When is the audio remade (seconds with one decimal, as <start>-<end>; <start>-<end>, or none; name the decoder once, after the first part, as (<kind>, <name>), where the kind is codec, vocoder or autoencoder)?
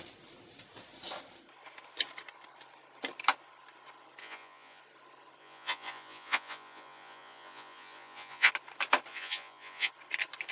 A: 4.2-4.8 (vocoder, Vocos); 5.4-8.5; 9.1-9.9